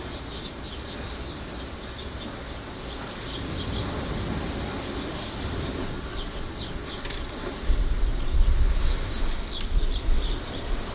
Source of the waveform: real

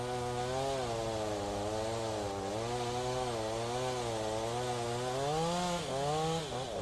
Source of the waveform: real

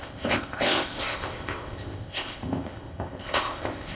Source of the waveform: fake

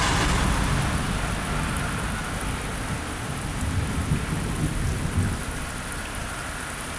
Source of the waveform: real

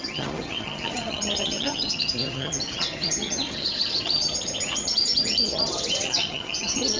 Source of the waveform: fake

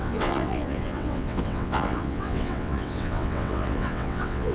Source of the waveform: fake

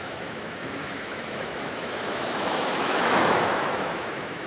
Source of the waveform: fake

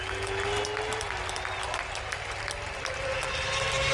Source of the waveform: real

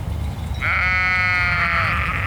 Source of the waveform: real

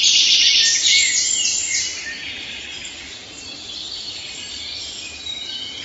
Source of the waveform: fake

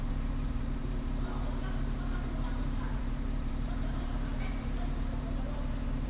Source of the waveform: fake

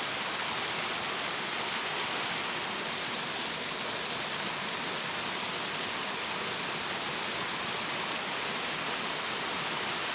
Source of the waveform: real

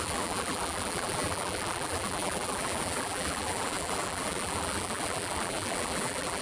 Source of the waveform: fake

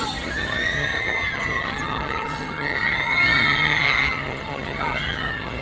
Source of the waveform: fake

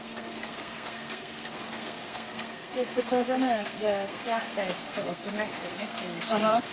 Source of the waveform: fake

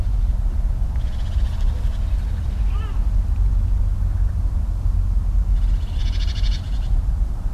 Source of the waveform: real